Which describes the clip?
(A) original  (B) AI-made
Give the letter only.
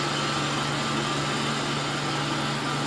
A